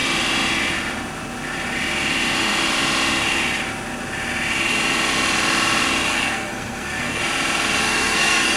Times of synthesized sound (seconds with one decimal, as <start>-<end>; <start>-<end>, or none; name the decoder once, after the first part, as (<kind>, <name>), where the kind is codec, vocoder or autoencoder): 6.1-7.2 (codec, SNAC); 7.8-8.6